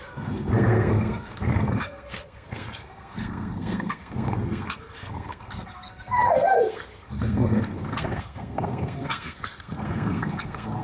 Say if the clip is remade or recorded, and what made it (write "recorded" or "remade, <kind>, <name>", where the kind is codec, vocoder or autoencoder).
remade, codec, SNAC